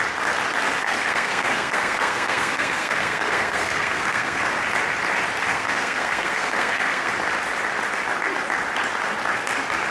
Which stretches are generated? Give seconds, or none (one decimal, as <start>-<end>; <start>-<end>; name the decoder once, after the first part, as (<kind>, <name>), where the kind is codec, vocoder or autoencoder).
0.8-4.4 (codec, SNAC); 5.5-7.1